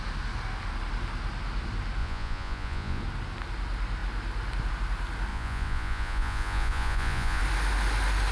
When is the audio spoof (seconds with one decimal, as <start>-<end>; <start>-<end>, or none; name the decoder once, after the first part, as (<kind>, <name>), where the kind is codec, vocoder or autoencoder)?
2.0-3.0 (vocoder, Vocos); 5.3-7.4